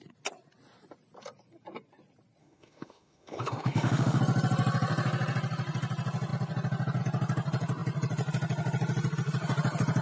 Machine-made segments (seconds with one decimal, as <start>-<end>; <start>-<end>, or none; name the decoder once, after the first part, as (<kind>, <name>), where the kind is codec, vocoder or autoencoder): 2.4-4.2 (autoencoder, DAC-VAE)